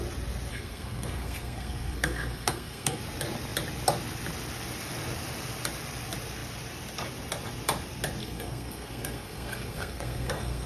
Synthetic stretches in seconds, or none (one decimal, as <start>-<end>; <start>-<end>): 0.5-3.0; 8.2-10.7